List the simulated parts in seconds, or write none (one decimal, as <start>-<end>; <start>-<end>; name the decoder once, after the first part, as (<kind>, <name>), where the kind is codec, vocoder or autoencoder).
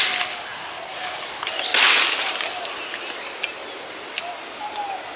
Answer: none